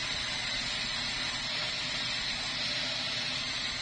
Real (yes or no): yes